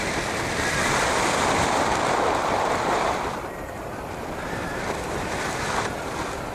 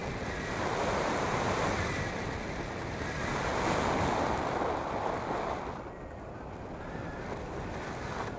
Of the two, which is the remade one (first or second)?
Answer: first